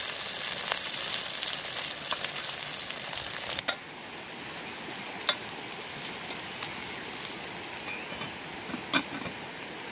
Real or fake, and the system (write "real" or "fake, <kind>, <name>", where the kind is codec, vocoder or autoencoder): real